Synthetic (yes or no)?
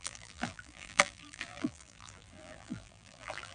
yes